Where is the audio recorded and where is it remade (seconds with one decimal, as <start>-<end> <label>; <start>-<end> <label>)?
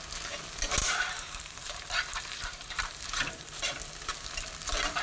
0.0-0.8 recorded; 0.8-3.6 remade; 3.6-5.0 recorded